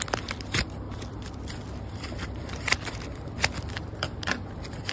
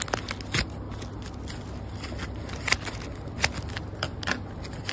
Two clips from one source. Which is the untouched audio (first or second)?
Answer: second